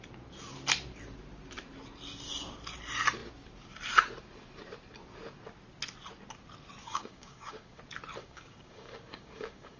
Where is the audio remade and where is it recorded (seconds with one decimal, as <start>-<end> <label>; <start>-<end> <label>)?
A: 0.0-6.8 recorded; 6.8-7.8 remade; 7.8-8.2 recorded; 8.2-9.8 remade